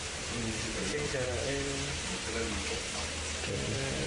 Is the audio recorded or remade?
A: recorded